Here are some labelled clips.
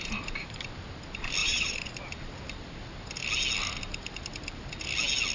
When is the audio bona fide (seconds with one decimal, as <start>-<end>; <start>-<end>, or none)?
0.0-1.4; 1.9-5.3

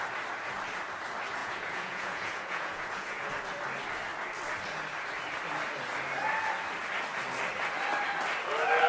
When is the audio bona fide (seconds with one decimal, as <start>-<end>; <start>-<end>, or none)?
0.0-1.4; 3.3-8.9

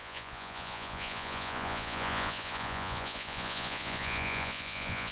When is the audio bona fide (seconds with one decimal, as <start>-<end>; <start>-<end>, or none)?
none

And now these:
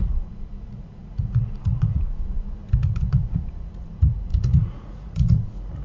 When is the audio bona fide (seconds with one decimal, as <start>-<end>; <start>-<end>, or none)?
none

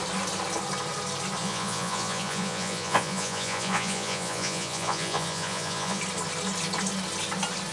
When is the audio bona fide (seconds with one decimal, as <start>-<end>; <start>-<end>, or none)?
0.0-1.4; 6.0-7.7